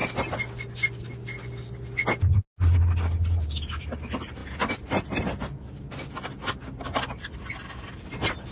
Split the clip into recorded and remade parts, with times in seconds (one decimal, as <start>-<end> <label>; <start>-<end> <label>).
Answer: 0.0-8.5 recorded